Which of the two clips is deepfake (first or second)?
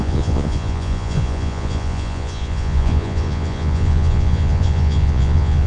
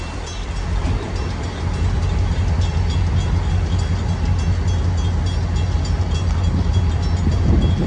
first